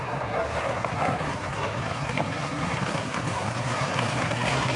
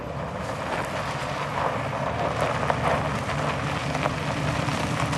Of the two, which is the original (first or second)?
second